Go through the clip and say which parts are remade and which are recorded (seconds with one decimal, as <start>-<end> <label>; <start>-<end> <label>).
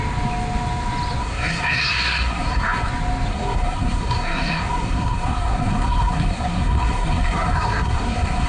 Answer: 0.0-1.2 recorded; 1.2-2.9 remade; 2.9-3.3 recorded; 3.3-8.5 remade